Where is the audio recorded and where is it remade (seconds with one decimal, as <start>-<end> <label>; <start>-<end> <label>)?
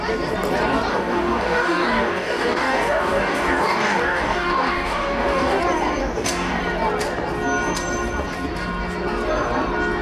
0.0-0.9 recorded; 0.9-5.6 remade; 5.6-6.0 recorded; 6.0-6.6 remade; 6.6-10.0 recorded